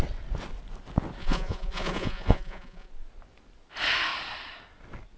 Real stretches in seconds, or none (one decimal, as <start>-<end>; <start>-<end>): 0.0-1.2; 2.9-5.2